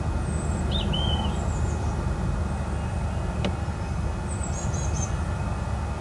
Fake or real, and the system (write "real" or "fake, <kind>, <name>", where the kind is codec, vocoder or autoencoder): real